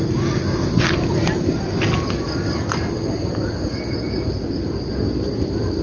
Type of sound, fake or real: real